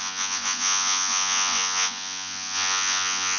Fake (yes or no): yes